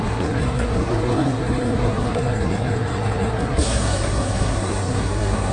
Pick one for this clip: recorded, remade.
remade